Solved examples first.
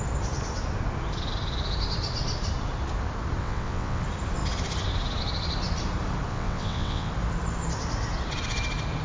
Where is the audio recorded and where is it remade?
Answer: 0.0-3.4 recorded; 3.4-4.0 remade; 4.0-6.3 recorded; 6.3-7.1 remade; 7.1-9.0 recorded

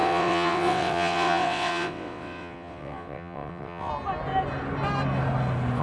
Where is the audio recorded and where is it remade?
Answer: 0.0-3.9 remade; 3.9-5.8 recorded

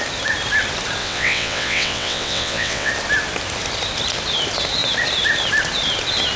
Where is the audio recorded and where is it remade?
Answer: 0.0-1.0 recorded; 1.0-2.9 remade; 2.9-6.4 recorded

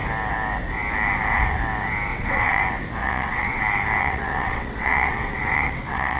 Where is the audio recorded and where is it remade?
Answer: 0.0-2.1 recorded; 2.1-2.6 remade; 2.6-3.0 recorded; 3.0-3.6 remade; 3.6-4.0 recorded; 4.0-6.2 remade